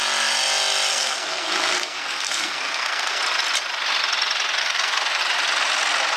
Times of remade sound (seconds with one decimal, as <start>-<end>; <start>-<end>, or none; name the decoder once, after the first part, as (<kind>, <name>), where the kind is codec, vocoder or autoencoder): 0.9-3.2 (codec, SNAC); 4.6-5.2